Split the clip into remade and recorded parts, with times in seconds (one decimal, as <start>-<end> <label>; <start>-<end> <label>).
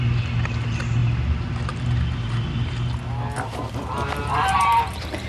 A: 0.0-5.3 recorded